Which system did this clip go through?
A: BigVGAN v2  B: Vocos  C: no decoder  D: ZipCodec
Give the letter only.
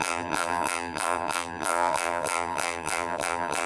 A